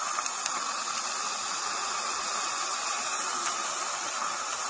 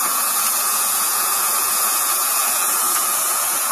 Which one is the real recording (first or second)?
first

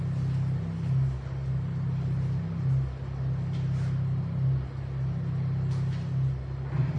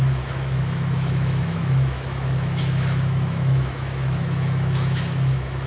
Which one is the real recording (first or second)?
first